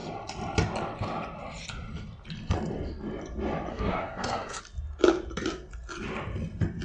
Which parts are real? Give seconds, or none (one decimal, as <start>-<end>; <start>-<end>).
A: 0.0-3.7; 4.6-6.8